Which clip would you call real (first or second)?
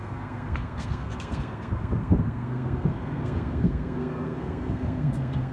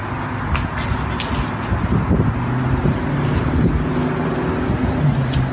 second